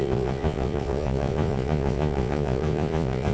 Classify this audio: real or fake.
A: fake